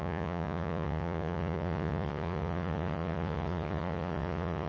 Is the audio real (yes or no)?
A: no